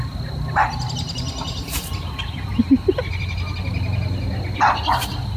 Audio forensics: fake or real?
real